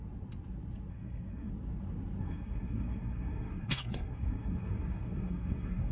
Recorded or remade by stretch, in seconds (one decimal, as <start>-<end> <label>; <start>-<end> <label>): 0.0-0.9 recorded; 0.9-1.5 remade; 1.5-2.2 recorded; 2.2-5.9 remade